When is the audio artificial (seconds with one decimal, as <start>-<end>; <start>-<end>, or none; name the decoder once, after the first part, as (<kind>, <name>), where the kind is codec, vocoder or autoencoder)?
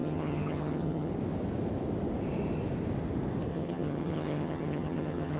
0.0-1.1 (vocoder, HiFi-GAN); 3.5-5.4